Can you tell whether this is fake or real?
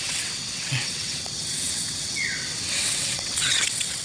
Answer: fake